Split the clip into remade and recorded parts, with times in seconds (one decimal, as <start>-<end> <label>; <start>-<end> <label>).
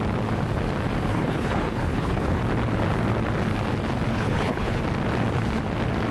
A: 0.0-1.1 recorded; 1.1-2.4 remade; 2.4-4.1 recorded; 4.1-4.8 remade; 4.8-6.1 recorded